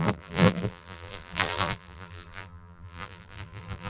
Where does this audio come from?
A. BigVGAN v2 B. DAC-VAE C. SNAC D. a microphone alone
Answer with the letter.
A